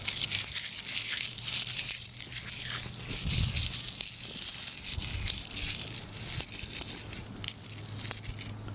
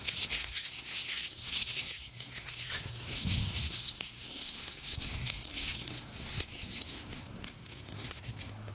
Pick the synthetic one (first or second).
second